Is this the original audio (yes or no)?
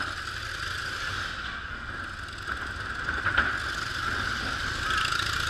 yes